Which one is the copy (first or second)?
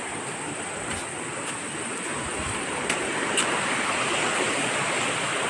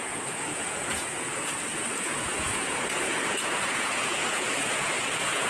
second